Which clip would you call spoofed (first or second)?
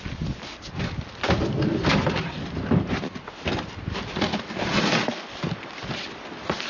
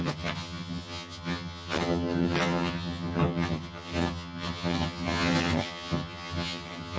second